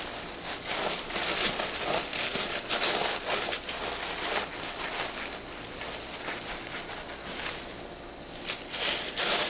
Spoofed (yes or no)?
no